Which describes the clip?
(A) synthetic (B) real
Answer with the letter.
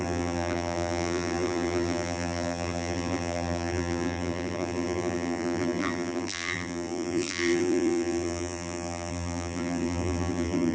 A